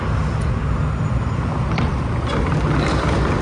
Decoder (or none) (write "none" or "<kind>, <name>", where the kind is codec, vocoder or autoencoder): none